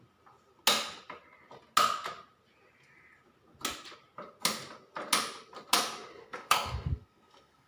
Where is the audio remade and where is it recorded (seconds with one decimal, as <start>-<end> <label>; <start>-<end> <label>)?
0.0-6.2 recorded; 6.2-7.7 remade